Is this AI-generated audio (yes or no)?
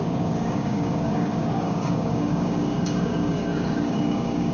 yes